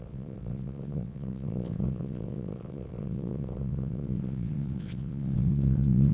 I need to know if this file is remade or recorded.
remade